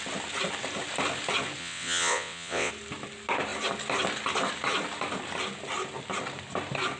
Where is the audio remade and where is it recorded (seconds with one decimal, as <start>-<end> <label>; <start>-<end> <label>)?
0.0-1.6 recorded; 1.6-2.7 remade; 2.7-7.0 recorded